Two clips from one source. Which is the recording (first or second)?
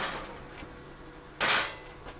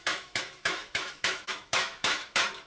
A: first